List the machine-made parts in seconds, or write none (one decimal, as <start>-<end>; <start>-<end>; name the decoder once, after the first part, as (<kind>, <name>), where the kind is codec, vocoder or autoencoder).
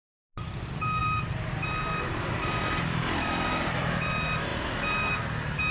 1.0-4.1 (vocoder, BigVGAN v2); 4.5-5.1